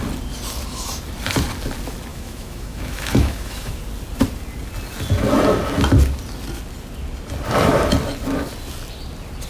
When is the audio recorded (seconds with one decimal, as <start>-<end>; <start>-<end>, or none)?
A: 0.0-2.1; 3.8-9.5